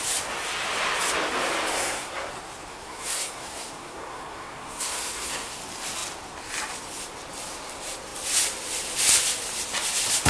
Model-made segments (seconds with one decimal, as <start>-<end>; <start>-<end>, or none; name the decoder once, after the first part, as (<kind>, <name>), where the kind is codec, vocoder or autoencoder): 1.7-2.3 (codec, SNAC); 2.7-5.6